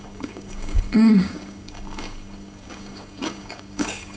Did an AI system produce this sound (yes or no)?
yes